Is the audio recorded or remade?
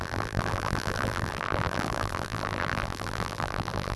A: remade